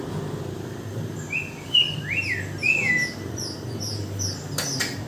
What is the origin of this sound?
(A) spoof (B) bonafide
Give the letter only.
B